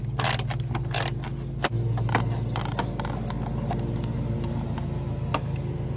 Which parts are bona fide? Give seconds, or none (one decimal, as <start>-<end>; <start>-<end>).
0.0-6.0